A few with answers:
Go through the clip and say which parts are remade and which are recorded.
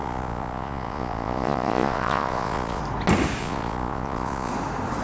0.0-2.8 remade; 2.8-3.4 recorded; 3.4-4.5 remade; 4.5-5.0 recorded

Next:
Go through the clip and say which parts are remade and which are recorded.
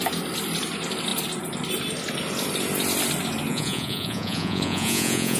0.0-3.5 recorded; 3.5-5.4 remade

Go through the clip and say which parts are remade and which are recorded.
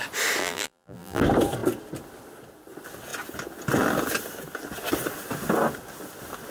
0.0-0.4 recorded; 0.4-1.2 remade; 1.2-6.5 recorded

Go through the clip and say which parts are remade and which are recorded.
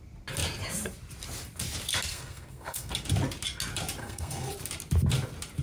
0.0-2.1 recorded; 2.1-2.9 remade; 2.9-4.0 recorded; 4.0-4.5 remade; 4.5-5.6 recorded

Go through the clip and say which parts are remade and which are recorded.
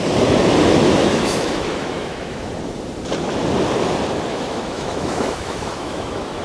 0.0-1.0 recorded; 1.0-2.5 remade; 2.5-4.3 recorded; 4.3-6.4 remade